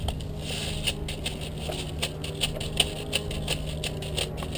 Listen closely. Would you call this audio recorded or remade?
recorded